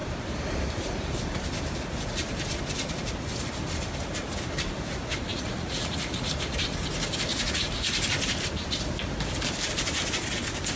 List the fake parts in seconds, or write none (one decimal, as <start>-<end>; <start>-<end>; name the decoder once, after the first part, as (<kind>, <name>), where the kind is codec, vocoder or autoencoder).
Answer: 5.3-6.3 (vocoder, Vocos); 7.3-7.9